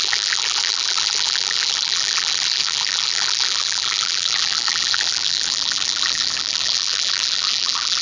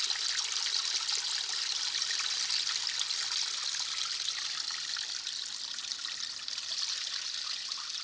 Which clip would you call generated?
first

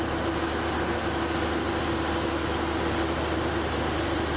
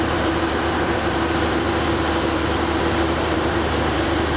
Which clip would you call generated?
second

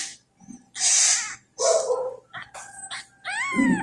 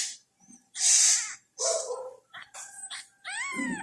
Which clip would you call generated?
second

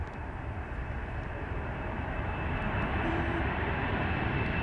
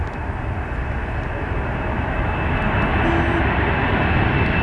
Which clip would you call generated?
first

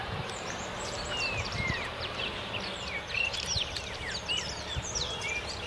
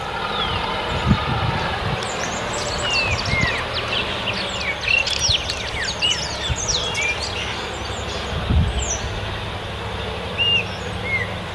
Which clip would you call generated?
first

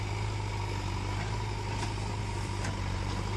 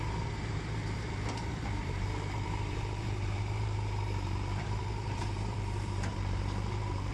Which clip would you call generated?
second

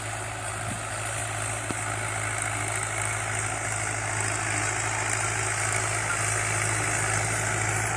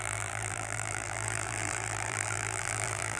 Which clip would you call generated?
second